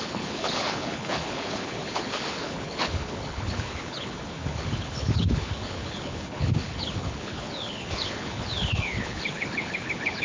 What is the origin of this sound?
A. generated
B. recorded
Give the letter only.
A